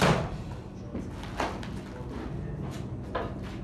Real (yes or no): yes